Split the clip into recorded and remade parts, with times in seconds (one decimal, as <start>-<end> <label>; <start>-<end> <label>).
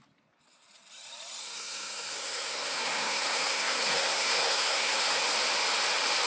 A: 0.0-1.4 recorded; 1.4-5.2 remade; 5.2-6.3 recorded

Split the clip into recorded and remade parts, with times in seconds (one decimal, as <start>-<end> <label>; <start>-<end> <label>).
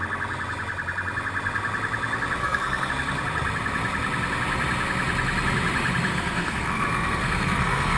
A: 0.0-2.4 recorded; 2.4-2.9 remade; 2.9-6.1 recorded; 6.1-8.0 remade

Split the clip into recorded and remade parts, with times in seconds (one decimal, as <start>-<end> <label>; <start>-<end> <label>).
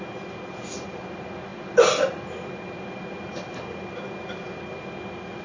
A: 0.0-5.4 recorded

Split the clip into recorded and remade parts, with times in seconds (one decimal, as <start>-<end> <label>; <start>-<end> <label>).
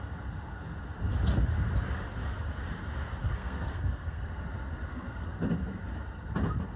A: 0.0-3.2 recorded; 3.2-4.4 remade; 4.4-4.9 recorded; 4.9-5.4 remade; 5.4-6.8 recorded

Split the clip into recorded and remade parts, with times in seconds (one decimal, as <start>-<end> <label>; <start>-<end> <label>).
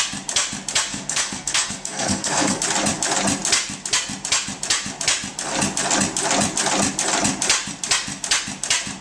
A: 0.0-0.9 recorded; 0.9-2.6 remade; 2.6-9.0 recorded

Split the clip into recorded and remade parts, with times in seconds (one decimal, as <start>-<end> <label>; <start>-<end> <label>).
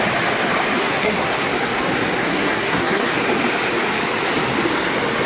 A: 0.0-0.8 recorded; 0.8-1.5 remade; 1.5-2.2 recorded; 2.2-3.1 remade; 3.1-5.3 recorded